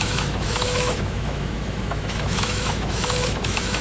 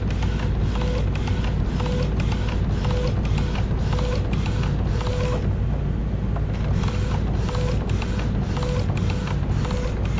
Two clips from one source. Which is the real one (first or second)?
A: second